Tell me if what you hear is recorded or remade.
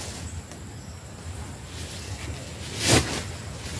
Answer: recorded